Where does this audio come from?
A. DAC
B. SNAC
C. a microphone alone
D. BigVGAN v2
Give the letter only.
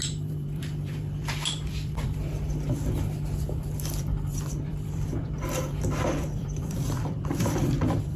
D